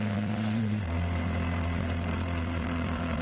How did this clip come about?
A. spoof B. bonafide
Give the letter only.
A